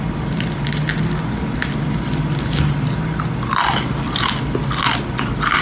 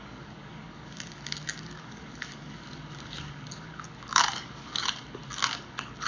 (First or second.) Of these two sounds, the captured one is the first